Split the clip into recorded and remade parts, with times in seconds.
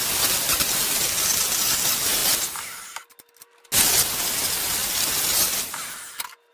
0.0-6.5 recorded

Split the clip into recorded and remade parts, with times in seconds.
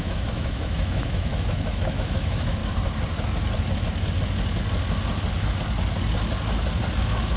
0.0-2.6 remade; 2.6-7.0 recorded; 7.0-7.4 remade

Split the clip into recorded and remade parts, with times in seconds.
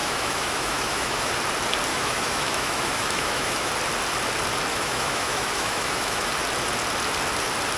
0.0-1.3 remade; 1.3-1.9 recorded; 1.9-3.7 remade; 3.7-4.7 recorded; 4.7-6.3 remade; 6.3-7.8 recorded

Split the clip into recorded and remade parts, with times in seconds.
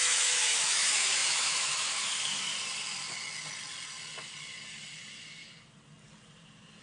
0.0-2.5 remade; 2.5-6.8 recorded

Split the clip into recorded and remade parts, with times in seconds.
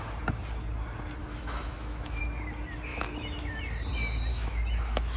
0.0-1.2 recorded; 1.2-2.2 remade; 2.2-2.9 recorded; 2.9-3.6 remade; 3.6-4.3 recorded; 4.3-5.2 remade